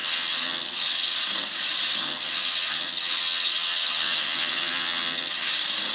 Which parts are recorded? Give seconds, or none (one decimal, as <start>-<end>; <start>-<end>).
1.2-2.0; 5.5-5.9